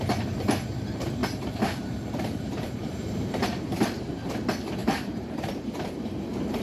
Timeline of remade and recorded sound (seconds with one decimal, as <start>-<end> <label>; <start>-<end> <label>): 0.0-1.2 recorded; 1.2-4.3 remade; 4.3-4.8 recorded; 4.8-5.5 remade; 5.5-6.6 recorded

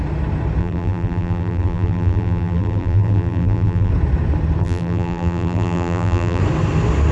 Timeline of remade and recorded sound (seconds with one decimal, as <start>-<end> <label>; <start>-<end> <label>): 0.0-0.6 recorded; 0.6-3.9 remade; 3.9-4.6 recorded; 4.6-6.4 remade; 6.4-7.1 recorded

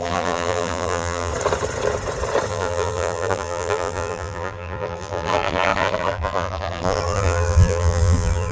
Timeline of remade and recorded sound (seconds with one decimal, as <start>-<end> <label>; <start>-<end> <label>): 0.0-1.3 remade; 1.3-2.5 recorded; 2.5-8.5 remade

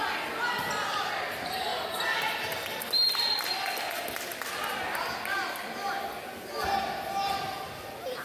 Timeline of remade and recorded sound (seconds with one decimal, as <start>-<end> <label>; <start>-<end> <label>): 0.0-8.2 recorded

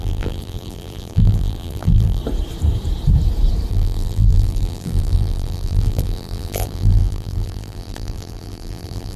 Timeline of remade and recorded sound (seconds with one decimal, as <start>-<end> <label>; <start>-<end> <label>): 0.0-2.2 remade; 2.2-3.7 recorded; 3.7-9.2 remade

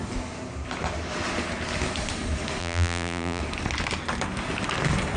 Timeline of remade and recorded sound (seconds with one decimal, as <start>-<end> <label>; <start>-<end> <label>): 0.0-2.6 recorded; 2.6-3.4 remade; 3.4-5.2 recorded

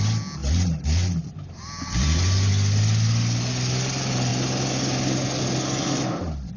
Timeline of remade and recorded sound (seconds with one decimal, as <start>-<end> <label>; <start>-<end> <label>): 0.0-0.4 recorded; 0.4-2.5 remade; 2.5-6.6 recorded

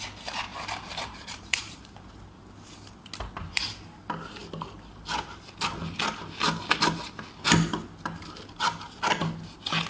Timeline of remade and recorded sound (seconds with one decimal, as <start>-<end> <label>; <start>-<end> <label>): 0.0-0.5 recorded; 0.5-2.1 remade; 2.1-9.9 recorded